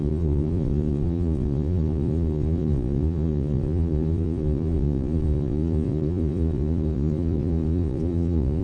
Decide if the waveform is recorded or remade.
remade